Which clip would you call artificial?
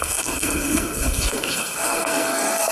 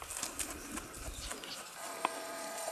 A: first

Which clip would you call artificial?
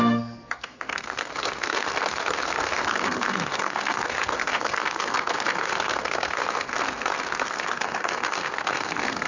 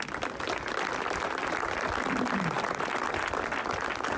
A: first